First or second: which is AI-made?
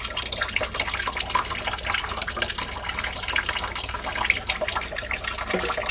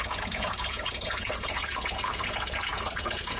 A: second